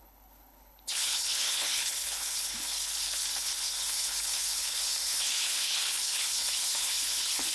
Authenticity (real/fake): fake